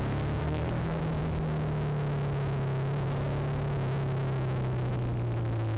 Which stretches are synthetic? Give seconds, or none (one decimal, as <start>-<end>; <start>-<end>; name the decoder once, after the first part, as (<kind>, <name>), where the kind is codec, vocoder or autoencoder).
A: 0.4-1.0 (codec, SNAC)